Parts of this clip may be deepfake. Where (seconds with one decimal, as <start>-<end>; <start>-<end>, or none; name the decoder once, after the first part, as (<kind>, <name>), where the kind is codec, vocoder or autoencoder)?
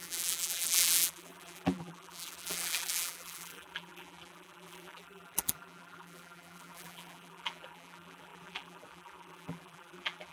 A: 0.0-10.3 (vocoder, BigVGAN v2)